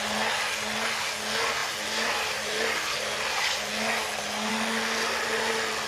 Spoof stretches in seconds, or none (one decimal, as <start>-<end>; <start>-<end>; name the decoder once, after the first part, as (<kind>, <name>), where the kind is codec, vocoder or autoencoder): none